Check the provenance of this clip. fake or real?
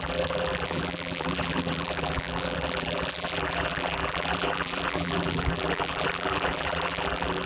fake